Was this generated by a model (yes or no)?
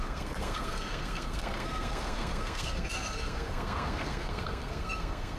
yes